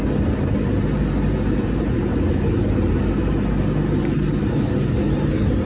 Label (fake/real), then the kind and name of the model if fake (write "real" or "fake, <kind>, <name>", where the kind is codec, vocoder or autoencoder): real